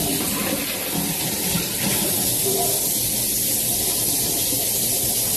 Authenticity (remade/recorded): recorded